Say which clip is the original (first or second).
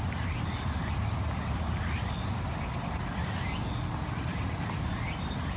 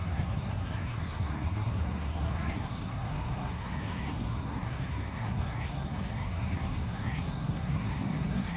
first